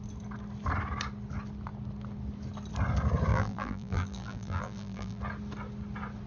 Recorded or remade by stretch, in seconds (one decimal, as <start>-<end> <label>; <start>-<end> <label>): 0.0-3.3 recorded; 3.3-5.2 remade; 5.2-6.3 recorded